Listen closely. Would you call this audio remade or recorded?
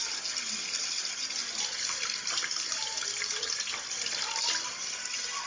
recorded